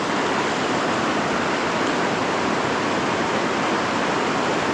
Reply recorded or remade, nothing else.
recorded